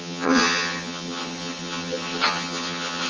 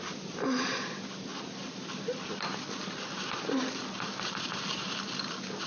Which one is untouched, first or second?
second